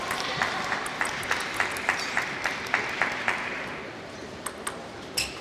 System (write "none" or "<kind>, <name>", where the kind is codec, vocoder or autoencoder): none